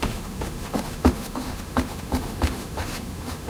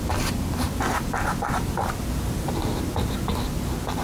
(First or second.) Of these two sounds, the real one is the second